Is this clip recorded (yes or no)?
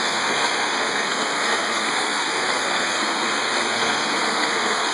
no